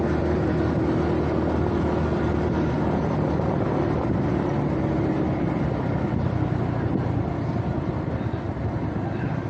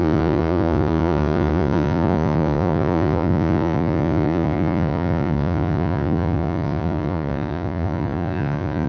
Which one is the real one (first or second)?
first